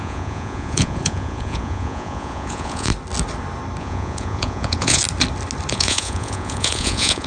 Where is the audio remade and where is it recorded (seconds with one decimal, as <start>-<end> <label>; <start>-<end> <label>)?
0.0-2.9 remade; 2.9-3.8 recorded; 3.8-5.0 remade; 5.0-5.7 recorded; 5.7-7.3 remade